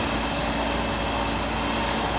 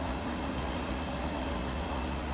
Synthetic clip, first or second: second